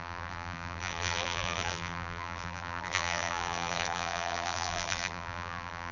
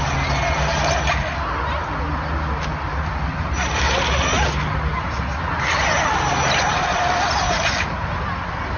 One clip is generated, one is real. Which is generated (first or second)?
first